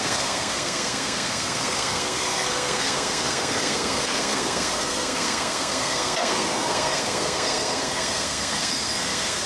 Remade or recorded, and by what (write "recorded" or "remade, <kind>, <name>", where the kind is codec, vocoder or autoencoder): remade, codec, SNAC